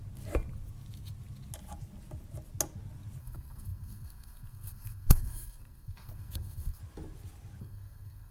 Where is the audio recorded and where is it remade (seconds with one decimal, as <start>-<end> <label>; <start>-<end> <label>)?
0.0-3.2 recorded; 3.2-6.8 remade; 6.8-7.6 recorded; 7.6-8.3 remade